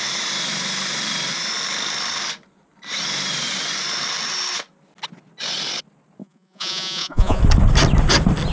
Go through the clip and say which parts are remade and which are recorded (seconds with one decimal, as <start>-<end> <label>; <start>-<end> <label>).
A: 0.0-6.2 recorded; 6.2-7.4 remade; 7.4-8.5 recorded